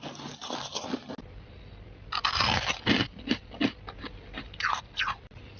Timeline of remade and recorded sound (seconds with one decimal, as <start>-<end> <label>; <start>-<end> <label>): 0.0-5.6 recorded